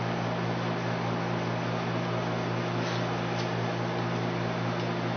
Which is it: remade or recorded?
recorded